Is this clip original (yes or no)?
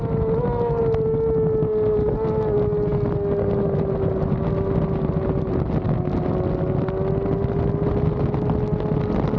yes